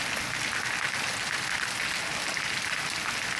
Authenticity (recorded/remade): recorded